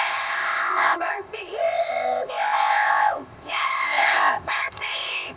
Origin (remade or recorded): remade